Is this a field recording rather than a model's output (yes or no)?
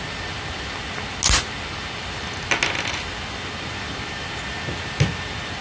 yes